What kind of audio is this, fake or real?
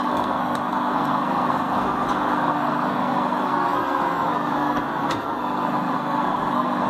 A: fake